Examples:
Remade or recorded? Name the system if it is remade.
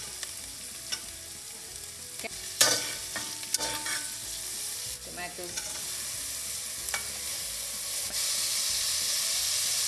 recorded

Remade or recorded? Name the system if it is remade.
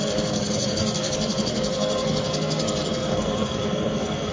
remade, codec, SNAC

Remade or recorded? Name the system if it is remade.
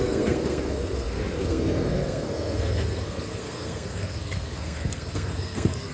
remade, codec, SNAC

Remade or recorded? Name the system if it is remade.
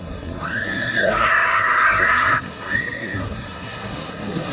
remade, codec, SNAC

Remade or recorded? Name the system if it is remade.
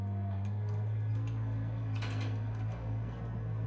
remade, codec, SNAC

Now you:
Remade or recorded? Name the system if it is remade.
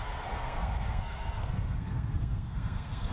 remade, codec, SNAC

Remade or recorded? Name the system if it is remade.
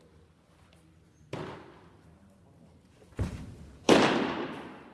recorded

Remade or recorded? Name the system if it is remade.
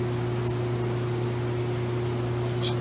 recorded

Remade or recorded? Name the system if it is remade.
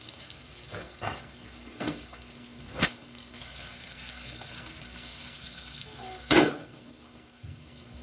remade, codec, SNAC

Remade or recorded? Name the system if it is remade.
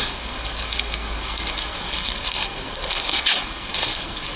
remade, codec, SNAC